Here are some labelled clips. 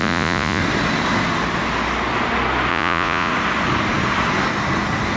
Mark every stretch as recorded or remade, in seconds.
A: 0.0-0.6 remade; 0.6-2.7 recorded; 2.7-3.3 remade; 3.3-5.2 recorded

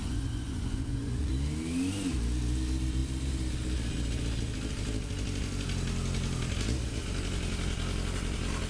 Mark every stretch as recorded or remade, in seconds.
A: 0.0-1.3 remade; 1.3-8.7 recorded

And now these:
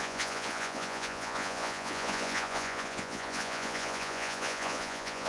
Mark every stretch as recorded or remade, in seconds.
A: 0.0-5.3 remade